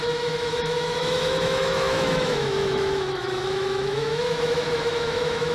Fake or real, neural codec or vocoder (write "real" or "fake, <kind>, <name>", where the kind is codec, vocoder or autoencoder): fake, autoencoder, DAC-VAE